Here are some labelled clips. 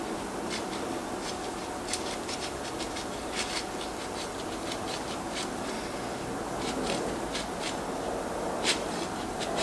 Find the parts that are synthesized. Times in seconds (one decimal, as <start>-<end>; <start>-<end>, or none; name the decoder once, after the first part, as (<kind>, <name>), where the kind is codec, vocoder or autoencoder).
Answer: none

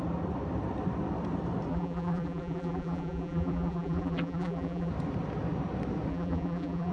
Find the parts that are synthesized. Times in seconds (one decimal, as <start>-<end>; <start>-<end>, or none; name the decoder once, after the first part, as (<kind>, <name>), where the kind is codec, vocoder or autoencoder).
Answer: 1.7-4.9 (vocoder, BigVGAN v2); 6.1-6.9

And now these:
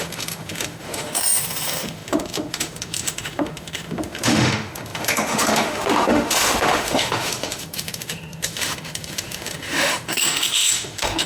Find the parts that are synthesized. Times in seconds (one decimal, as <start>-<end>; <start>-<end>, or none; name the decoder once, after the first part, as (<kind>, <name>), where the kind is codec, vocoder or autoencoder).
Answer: 0.0-11.3 (autoencoder, DAC-VAE)

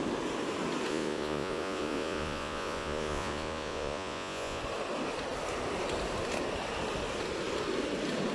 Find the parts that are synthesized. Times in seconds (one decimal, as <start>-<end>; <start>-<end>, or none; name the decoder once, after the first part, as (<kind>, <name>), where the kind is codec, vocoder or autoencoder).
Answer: 0.9-4.6 (vocoder, Vocos)

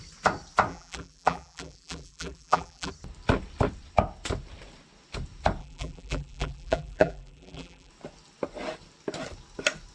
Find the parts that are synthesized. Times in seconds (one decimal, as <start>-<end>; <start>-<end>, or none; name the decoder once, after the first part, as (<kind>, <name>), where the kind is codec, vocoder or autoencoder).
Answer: 0.7-2.9 (vocoder, BigVGAN v2); 5.6-7.9

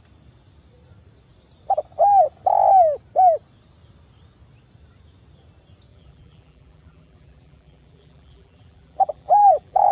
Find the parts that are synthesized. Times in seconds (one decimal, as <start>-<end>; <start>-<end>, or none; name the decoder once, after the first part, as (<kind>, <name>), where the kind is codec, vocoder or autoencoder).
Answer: 5.9-9.9 (vocoder, BigVGAN v2)